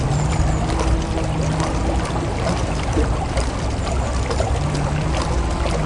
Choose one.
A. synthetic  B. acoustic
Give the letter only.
B